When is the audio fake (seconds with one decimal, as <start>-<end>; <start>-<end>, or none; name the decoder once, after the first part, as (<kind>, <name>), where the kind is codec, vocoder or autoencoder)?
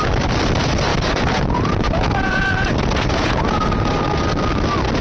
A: 0.9-3.9 (vocoder, Vocos)